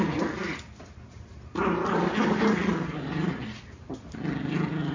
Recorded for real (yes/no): yes